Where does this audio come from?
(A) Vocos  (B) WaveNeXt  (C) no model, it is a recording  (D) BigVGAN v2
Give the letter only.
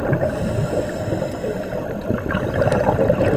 C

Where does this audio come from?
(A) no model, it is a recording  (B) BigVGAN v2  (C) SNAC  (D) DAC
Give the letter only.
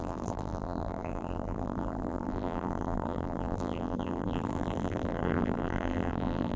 B